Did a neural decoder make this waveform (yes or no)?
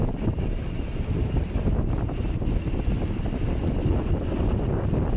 no